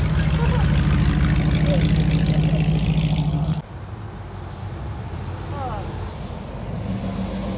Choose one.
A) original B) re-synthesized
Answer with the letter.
A